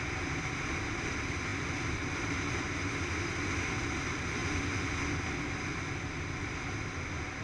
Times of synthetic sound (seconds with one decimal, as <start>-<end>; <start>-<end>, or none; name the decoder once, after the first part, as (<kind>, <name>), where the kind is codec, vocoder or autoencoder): none

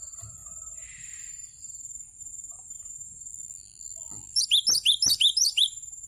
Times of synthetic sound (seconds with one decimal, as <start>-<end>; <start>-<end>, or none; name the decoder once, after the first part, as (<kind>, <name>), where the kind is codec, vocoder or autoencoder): 3.3-4.4 (vocoder, BigVGAN v2)

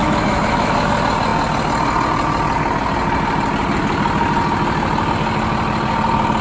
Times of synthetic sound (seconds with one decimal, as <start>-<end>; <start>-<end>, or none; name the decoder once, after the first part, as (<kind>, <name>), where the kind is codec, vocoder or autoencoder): 0.0-0.9 (autoencoder, DAC-VAE)

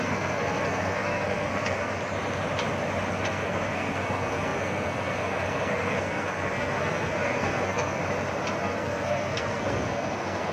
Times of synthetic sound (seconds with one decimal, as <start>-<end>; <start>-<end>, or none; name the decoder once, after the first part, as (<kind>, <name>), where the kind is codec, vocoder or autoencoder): 0.0-1.9 (codec, SNAC); 3.1-8.0; 8.6-10.5

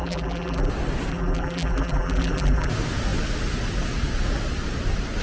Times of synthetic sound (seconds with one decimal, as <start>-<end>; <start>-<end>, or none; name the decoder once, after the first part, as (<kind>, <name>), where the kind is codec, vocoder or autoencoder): 0.0-0.7 (vocoder, BigVGAN v2); 1.1-2.7

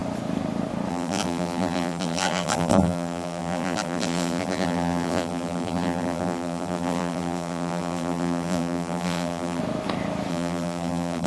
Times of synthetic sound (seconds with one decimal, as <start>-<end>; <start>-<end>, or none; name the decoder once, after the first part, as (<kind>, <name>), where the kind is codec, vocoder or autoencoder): 0.9-9.6 (vocoder, BigVGAN v2); 10.3-11.3